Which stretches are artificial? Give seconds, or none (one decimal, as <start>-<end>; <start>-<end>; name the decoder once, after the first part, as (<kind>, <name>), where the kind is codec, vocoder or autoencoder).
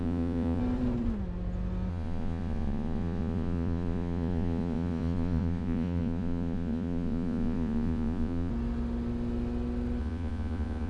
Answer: 0.0-0.6 (vocoder, Vocos); 1.9-8.5; 10.0-10.9